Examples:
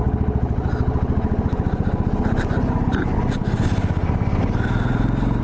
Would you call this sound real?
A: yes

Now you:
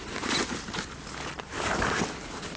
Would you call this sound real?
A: yes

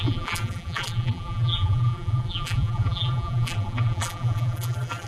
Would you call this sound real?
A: no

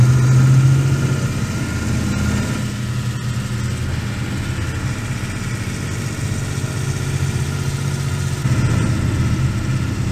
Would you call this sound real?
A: yes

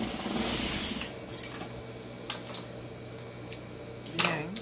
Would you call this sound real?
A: yes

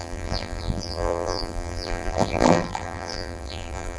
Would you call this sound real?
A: no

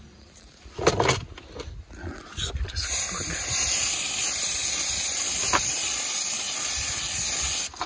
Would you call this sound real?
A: yes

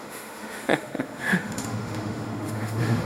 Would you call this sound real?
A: no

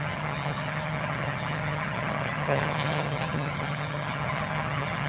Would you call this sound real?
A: no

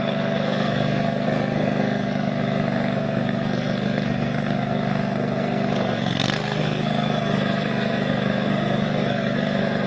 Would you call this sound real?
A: no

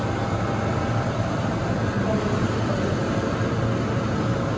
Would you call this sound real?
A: yes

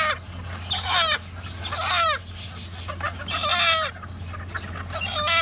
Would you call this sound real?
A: yes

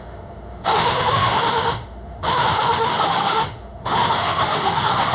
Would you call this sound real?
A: no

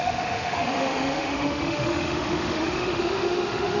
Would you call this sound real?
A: no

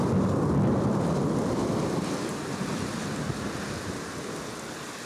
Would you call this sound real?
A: yes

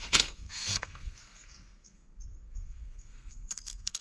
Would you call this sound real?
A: no